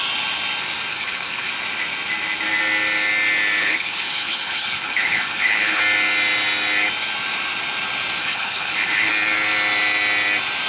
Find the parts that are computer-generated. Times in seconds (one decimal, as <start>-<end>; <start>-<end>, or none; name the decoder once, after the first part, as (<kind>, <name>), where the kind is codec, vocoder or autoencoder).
0.9-1.5 (codec, HILCodec); 3.6-5.8; 8.2-9.1